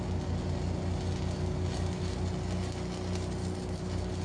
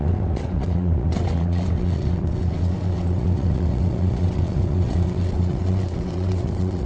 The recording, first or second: first